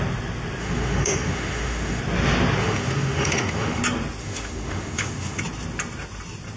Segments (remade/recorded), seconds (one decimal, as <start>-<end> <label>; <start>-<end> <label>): 0.0-0.6 recorded; 0.6-2.0 remade; 2.0-2.6 recorded; 2.6-3.8 remade; 3.8-4.2 recorded; 4.2-5.4 remade; 5.4-6.6 recorded